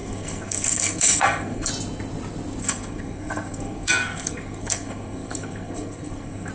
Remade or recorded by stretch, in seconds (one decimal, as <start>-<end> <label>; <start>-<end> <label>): 0.0-1.7 remade; 1.7-2.6 recorded; 2.6-6.5 remade